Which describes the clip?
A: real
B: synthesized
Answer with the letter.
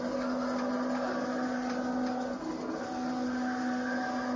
A